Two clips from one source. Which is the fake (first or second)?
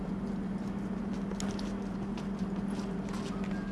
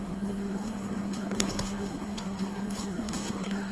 second